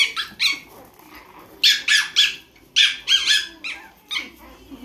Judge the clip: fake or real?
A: real